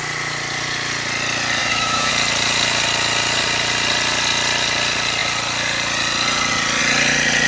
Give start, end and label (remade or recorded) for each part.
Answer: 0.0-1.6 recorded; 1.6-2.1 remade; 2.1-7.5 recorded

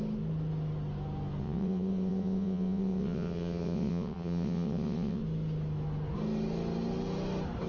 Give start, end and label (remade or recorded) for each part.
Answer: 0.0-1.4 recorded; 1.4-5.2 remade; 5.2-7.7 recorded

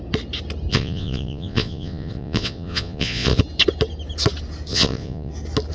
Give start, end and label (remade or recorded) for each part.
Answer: 0.0-0.7 recorded; 0.7-3.4 remade; 3.4-4.7 recorded; 4.7-5.3 remade; 5.3-5.7 recorded

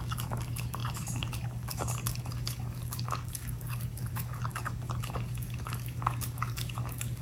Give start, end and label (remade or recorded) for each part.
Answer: 0.0-7.2 remade

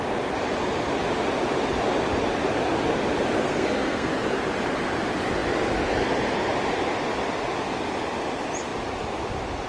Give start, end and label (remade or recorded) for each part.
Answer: 0.0-3.4 recorded; 3.4-4.1 remade; 4.1-9.7 recorded

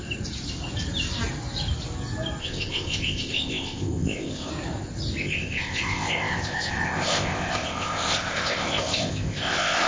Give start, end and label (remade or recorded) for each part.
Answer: 0.0-2.4 recorded; 2.4-4.5 remade; 4.5-5.2 recorded; 5.2-9.9 remade

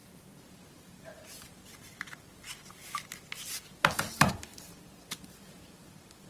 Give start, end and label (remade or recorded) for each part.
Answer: 0.0-1.1 remade; 1.1-4.1 recorded; 4.1-6.3 remade

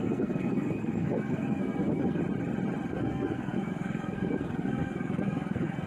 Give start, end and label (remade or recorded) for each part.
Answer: 0.0-2.2 remade; 2.2-2.9 recorded; 2.9-5.9 remade